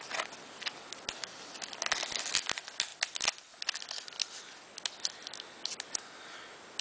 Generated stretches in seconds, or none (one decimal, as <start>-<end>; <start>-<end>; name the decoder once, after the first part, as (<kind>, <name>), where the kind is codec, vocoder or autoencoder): none